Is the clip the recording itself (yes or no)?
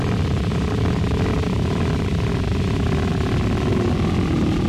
yes